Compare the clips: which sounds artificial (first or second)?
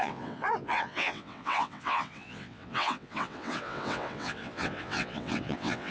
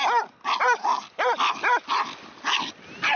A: first